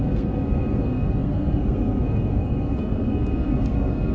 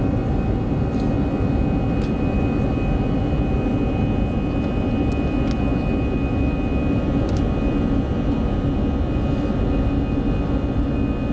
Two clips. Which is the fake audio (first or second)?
first